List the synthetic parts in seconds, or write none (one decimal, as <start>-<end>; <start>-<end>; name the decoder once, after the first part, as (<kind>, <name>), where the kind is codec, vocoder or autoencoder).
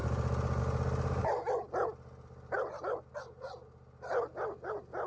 none